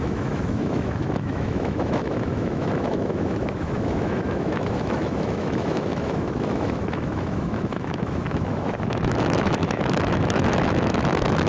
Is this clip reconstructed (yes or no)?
yes